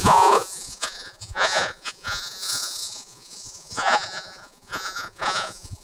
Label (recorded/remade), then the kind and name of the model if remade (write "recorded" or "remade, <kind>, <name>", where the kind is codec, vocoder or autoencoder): remade, vocoder, Vocos